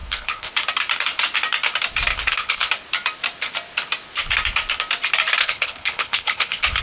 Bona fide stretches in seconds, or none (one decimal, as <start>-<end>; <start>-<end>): 0.5-2.1; 2.7-5.4

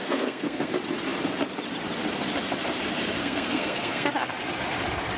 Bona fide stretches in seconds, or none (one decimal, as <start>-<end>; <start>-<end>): 0.7-3.2; 4.1-5.2

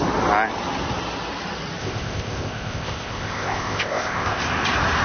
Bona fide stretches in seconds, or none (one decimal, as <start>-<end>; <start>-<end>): 0.0-1.8; 4.4-5.0